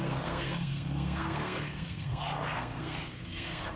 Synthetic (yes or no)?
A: yes